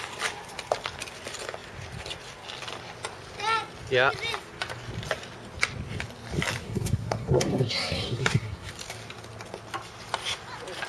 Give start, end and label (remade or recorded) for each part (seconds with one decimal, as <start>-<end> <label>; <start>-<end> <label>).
0.0-6.6 recorded; 6.6-8.7 remade; 8.7-10.9 recorded